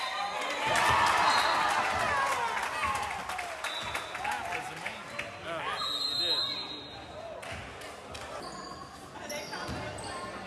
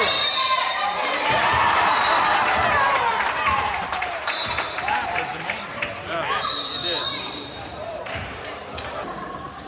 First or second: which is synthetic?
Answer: second